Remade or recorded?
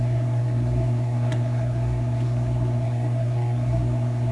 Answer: remade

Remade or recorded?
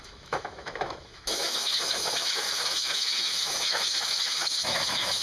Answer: remade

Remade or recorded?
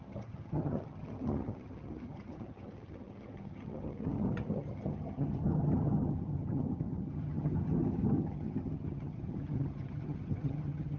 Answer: remade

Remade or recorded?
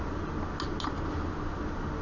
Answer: recorded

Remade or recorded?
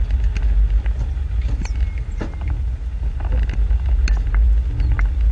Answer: recorded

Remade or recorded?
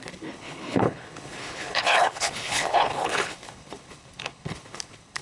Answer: remade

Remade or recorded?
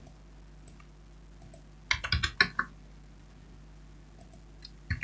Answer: recorded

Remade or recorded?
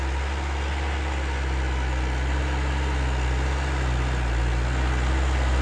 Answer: recorded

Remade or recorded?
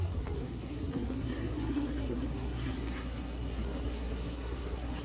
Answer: remade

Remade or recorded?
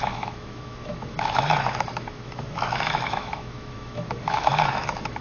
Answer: remade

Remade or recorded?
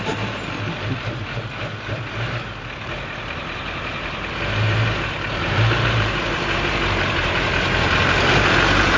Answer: remade